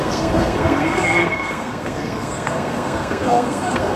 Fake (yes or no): yes